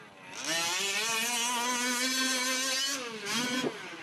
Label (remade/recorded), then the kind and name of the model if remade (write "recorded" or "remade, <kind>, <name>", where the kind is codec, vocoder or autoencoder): recorded